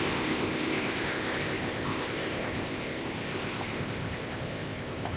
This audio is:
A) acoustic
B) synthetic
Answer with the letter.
B